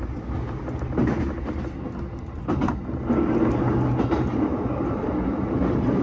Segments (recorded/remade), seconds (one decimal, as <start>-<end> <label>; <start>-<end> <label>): 0.0-6.0 recorded